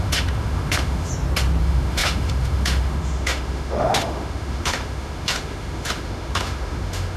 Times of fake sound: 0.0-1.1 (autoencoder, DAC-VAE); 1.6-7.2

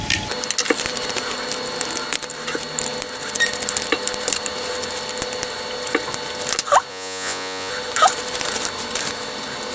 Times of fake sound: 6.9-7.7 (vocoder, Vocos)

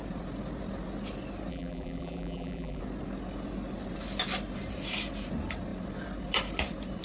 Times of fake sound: 1.5-2.8 (vocoder, BigVGAN v2)

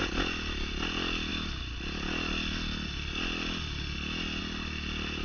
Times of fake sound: none

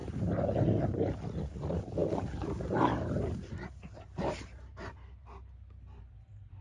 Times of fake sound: none

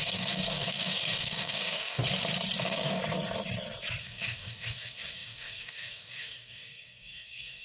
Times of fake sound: 0.0-2.0 (codec, DAC); 2.6-3.0; 4.0-7.6

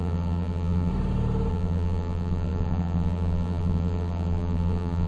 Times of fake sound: 0.0-0.9 (vocoder, BigVGAN v2); 1.5-5.1